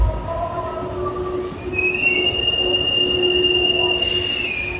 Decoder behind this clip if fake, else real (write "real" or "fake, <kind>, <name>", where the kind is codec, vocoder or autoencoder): real